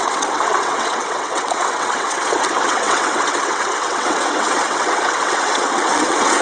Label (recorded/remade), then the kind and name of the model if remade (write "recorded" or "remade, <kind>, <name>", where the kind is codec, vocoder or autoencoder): remade, vocoder, WaveNeXt